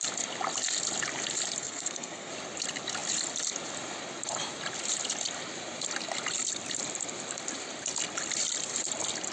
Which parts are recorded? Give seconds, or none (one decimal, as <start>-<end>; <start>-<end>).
0.0-1.6; 2.3-9.3